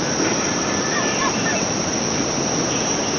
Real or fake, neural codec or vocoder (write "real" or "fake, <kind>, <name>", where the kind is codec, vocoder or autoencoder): real